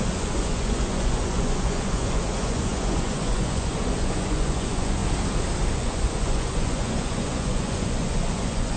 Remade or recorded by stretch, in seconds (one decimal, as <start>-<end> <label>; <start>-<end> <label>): 0.0-5.0 remade; 5.0-5.7 recorded; 5.7-8.8 remade